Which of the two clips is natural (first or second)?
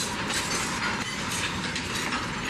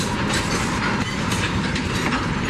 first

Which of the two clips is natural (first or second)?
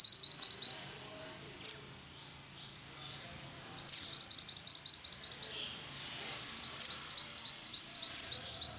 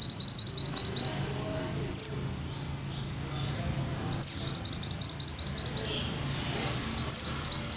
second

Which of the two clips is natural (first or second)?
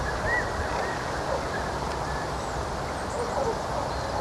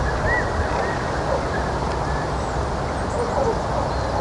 second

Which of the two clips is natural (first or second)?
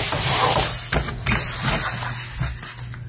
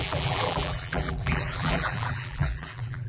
first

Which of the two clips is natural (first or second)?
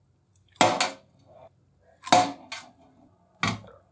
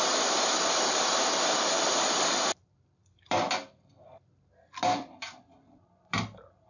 first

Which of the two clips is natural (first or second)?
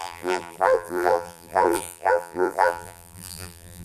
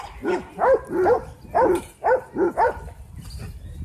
second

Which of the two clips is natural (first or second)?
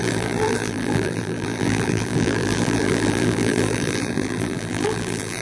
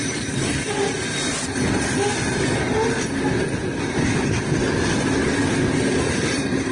second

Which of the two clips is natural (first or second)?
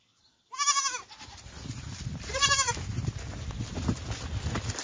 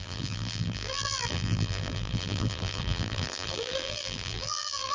first